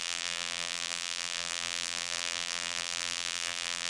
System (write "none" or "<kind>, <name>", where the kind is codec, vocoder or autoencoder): vocoder, BigVGAN v2